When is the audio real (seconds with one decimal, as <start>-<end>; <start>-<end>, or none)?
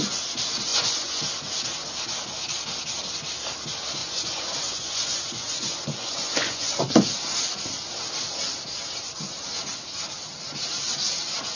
0.0-0.7; 1.2-4.0; 6.8-11.6